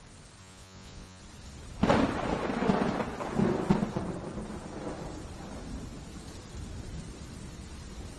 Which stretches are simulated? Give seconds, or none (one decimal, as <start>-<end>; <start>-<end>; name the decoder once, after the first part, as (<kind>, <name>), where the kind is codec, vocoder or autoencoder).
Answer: 0.4-1.2 (vocoder, Vocos)